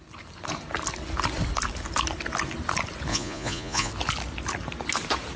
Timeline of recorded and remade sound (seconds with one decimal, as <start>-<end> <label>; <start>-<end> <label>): 0.0-3.1 recorded; 3.1-3.9 remade; 3.9-5.4 recorded